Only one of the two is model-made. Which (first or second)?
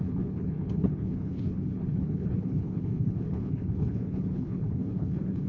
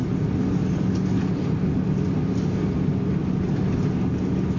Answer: first